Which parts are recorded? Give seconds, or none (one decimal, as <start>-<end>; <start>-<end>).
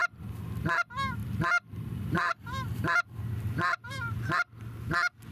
0.0-1.2; 4.4-5.3